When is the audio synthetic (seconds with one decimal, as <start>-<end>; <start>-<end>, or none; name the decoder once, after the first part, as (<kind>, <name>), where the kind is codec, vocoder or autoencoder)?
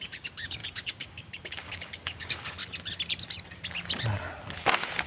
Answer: 0.0-2.6 (codec, DAC)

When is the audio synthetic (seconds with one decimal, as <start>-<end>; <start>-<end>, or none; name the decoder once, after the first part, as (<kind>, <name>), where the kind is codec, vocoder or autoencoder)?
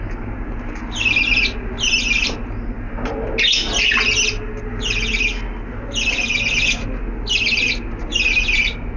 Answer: none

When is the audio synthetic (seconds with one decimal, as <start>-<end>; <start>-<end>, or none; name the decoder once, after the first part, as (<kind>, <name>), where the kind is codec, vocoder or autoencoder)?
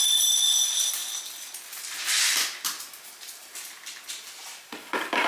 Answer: none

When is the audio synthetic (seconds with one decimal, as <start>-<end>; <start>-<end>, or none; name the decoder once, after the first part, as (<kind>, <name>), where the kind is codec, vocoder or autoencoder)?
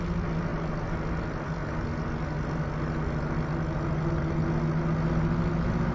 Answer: none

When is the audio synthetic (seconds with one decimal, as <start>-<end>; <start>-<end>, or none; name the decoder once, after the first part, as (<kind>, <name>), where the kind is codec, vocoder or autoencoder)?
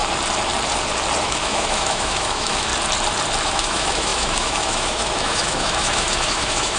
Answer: 1.2-2.7 (autoencoder, DAC-VAE); 3.4-6.8